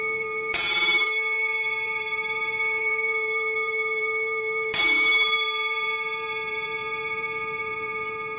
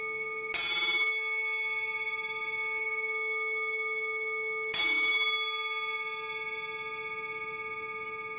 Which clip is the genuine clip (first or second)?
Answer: second